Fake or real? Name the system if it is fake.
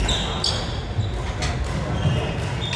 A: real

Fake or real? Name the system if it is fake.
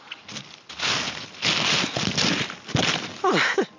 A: real